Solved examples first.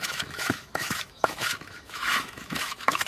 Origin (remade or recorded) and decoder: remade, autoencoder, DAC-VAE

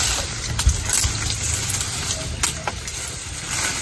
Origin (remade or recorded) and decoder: recorded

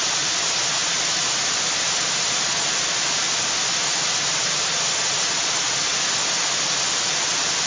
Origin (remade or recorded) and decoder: recorded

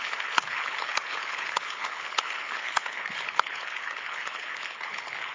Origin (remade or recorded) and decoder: remade, codec, HILCodec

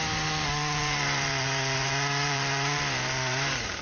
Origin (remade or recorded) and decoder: remade, vocoder, BigVGAN v2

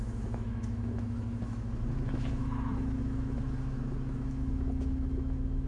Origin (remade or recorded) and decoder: remade, autoencoder, DAC-VAE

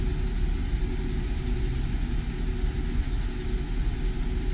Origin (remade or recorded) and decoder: recorded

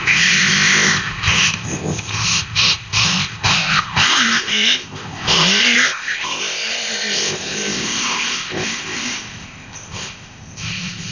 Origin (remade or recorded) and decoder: remade, codec, ZipCodec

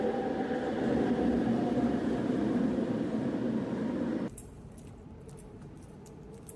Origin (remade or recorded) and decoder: recorded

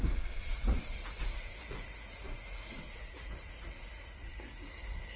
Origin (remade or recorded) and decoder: remade, vocoder, Vocos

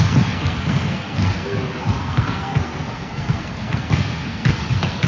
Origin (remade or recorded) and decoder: remade, codec, SNAC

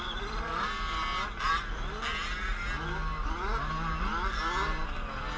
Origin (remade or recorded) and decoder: recorded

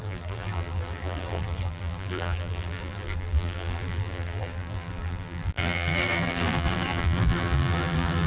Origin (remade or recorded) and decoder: remade, vocoder, BigVGAN v2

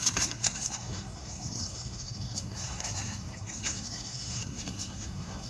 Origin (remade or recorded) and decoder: remade, codec, SNAC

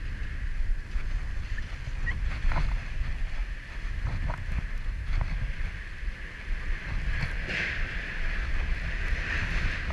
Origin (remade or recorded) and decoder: recorded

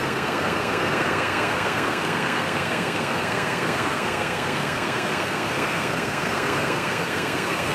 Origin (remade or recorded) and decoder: remade, codec, SNAC